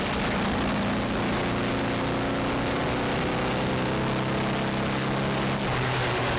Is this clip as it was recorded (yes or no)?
yes